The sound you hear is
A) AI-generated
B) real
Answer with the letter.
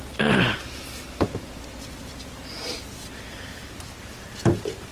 A